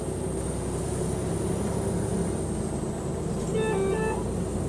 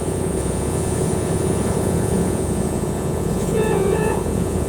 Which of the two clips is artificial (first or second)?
second